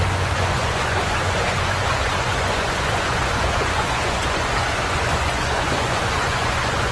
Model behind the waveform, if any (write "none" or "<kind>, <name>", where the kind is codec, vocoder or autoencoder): vocoder, Vocos